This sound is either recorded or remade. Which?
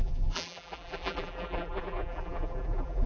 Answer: remade